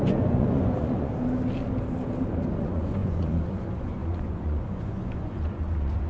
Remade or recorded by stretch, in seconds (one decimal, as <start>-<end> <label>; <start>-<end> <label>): 0.0-1.1 remade; 1.1-2.6 recorded; 2.6-6.1 remade